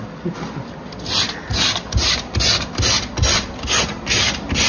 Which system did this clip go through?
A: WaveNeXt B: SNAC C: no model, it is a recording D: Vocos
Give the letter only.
C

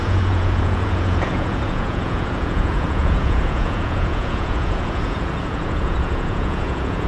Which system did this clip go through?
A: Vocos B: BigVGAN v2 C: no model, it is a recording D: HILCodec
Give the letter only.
A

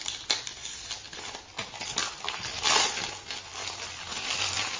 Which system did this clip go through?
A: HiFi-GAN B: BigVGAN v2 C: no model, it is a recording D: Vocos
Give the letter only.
C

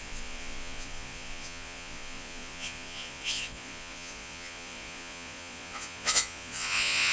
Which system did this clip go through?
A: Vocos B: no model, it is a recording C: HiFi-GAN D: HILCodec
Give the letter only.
A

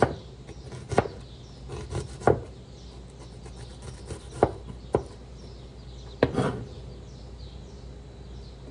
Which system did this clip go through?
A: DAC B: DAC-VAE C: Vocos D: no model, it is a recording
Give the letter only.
D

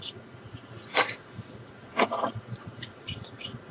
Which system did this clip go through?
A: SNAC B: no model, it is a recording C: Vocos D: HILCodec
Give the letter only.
C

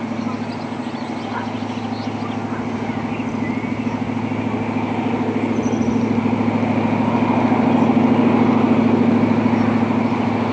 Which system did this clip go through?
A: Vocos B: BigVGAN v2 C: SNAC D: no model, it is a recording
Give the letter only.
D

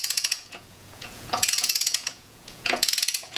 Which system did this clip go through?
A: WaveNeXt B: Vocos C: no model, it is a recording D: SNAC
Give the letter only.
B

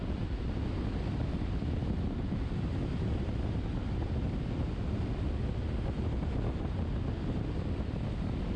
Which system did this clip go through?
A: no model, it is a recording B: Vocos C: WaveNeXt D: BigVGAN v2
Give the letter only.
A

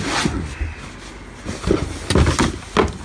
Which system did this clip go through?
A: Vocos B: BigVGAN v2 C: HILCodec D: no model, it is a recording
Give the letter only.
D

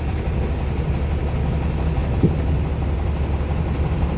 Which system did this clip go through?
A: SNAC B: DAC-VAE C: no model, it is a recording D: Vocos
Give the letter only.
C